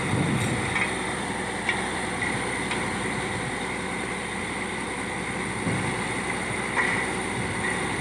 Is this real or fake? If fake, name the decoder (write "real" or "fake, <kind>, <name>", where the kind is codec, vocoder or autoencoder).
real